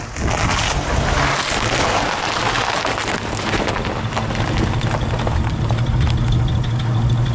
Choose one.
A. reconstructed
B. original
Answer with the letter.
B